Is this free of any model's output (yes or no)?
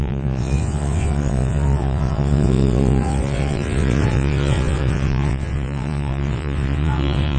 no